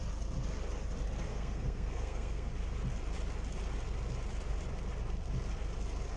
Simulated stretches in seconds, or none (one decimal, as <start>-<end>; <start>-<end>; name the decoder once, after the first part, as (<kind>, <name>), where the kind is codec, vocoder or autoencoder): 1.3-2.5 (codec, SNAC)